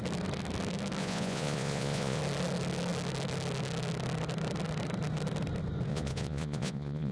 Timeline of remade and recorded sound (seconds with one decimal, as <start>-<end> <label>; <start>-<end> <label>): 0.0-1.0 recorded; 1.0-2.2 remade; 2.2-5.9 recorded; 5.9-7.1 remade